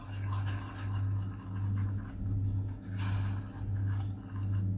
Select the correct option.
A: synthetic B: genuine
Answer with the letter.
B